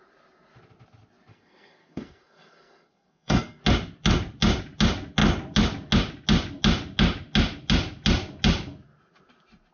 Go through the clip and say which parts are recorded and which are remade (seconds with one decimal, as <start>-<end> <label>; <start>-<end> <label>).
0.0-1.3 recorded; 1.3-3.6 remade; 3.6-9.7 recorded